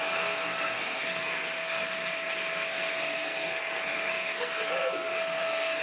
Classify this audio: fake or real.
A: fake